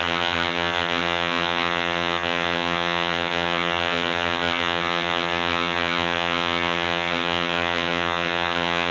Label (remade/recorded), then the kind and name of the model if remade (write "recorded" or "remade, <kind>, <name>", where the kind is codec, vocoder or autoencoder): remade, vocoder, HiFi-GAN